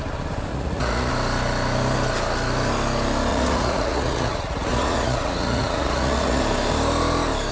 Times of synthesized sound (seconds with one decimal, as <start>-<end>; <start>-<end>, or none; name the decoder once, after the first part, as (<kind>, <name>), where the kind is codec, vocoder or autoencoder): 0.5-1.1 (vocoder, Vocos); 3.3-6.4